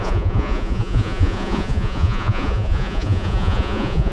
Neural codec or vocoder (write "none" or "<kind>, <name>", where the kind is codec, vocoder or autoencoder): vocoder, Vocos